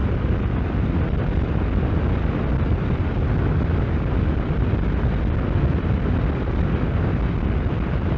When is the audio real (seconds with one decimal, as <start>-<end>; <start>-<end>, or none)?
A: 0.0-8.2